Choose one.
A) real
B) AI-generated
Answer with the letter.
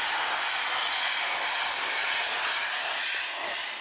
A